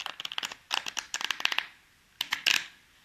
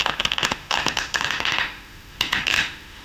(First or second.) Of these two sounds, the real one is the first